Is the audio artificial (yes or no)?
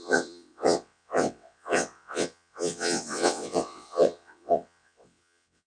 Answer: yes